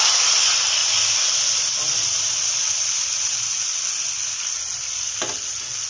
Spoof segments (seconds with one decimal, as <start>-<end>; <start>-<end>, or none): none